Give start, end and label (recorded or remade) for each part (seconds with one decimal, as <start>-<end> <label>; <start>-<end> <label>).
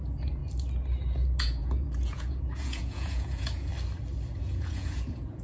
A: 0.0-0.4 remade; 0.4-1.4 recorded; 1.4-3.7 remade; 3.7-4.4 recorded; 4.4-5.4 remade